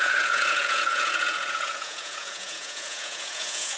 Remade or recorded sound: remade